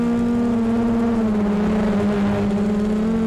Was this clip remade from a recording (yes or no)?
no